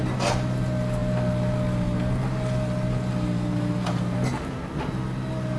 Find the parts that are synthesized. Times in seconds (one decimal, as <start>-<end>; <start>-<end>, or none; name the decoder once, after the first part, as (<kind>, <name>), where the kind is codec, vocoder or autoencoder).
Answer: none